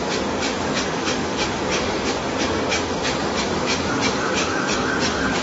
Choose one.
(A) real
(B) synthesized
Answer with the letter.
B